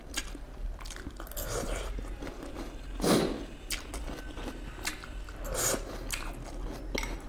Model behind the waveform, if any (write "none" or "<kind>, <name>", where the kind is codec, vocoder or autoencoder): none